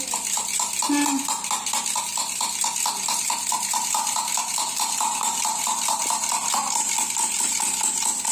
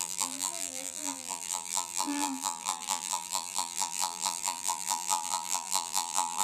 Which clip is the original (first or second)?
first